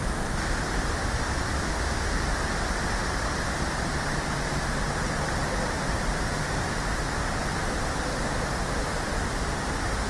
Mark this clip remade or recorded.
recorded